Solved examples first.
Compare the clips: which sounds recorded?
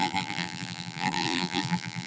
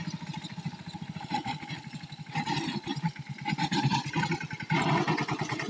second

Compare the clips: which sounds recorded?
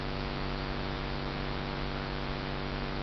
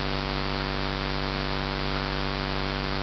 second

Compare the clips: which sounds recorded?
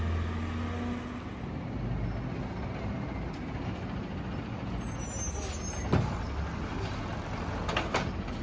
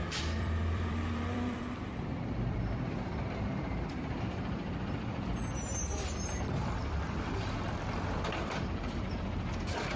first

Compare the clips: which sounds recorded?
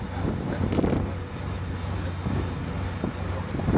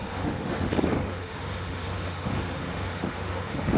first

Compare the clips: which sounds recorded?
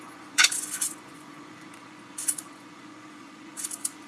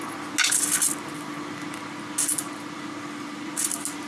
second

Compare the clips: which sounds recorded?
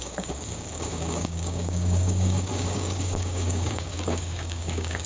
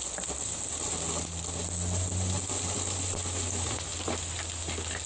second